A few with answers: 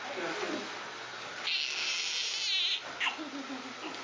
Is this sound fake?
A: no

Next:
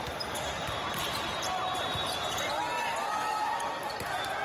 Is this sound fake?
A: no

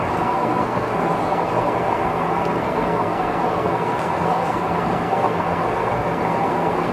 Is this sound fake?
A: yes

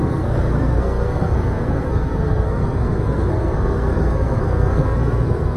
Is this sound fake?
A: yes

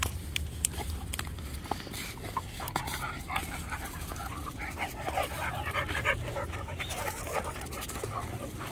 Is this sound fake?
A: no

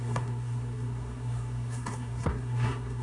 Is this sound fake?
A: yes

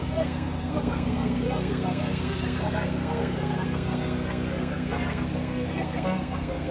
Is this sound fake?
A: yes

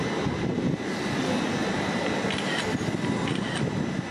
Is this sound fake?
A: no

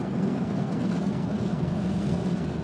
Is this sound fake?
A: yes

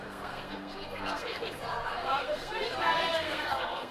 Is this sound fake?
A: yes